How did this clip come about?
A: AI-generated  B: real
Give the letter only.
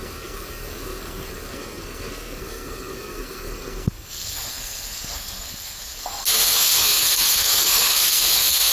A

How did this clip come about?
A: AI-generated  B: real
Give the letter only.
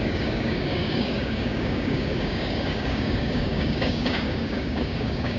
A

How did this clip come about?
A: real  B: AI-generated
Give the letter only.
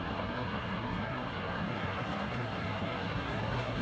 B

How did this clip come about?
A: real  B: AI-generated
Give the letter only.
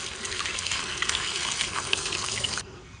B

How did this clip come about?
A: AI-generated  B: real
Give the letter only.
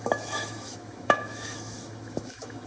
A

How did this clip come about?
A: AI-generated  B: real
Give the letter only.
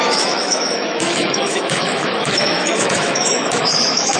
A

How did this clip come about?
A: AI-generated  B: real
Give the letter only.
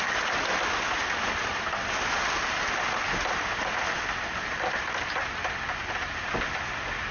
B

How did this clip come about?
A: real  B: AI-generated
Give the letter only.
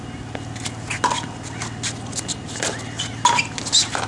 A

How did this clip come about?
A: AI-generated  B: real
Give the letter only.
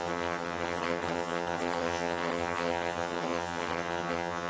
A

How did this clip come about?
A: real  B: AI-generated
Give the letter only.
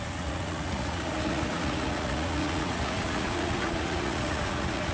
B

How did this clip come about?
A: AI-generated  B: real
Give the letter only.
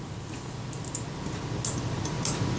B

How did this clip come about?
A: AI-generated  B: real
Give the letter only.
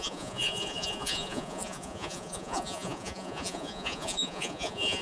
A